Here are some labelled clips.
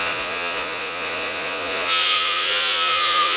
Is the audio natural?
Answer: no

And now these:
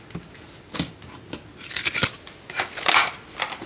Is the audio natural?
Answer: yes